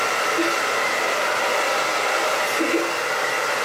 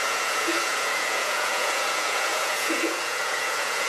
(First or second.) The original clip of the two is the first